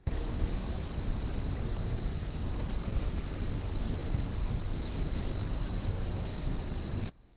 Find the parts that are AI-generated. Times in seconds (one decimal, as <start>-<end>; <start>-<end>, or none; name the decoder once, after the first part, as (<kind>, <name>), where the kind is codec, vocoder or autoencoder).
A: 0.0-0.9 (codec, SNAC); 1.6-7.4